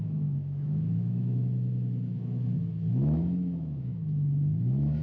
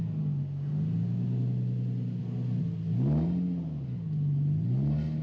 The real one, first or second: second